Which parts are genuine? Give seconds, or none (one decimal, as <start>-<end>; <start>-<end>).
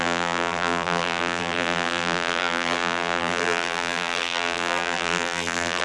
none